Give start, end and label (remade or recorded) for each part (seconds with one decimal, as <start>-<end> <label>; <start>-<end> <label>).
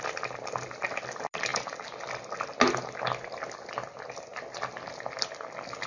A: 0.0-5.9 recorded